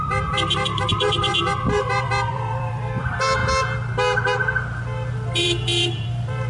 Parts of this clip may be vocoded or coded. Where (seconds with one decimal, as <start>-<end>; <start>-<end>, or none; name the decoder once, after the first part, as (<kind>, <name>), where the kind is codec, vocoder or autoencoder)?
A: 0.0-3.4 (vocoder, BigVGAN v2); 5.1-6.5